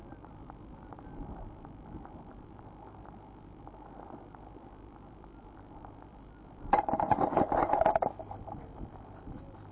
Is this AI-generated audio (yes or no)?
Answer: yes